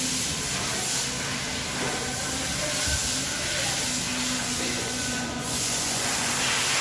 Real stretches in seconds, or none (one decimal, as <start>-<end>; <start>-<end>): 0.0-4.4; 6.3-6.8